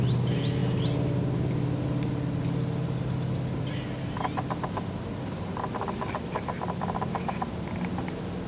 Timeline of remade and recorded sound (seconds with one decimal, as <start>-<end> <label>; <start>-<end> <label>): 0.0-0.6 remade; 0.6-5.7 recorded; 5.7-8.5 remade